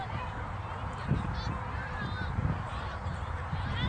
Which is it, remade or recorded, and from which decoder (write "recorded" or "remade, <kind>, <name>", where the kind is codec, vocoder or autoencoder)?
remade, vocoder, BigVGAN v2